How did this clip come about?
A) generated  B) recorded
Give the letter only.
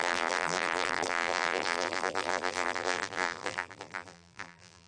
A